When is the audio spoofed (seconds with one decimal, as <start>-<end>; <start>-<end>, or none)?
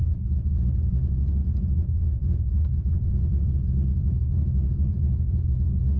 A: 1.4-3.5; 3.9-5.5